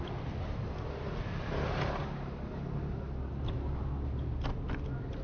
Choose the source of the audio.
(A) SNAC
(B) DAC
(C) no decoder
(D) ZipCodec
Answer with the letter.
C